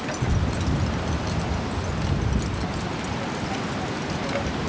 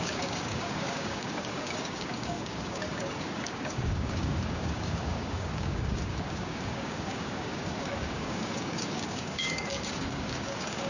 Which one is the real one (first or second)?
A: first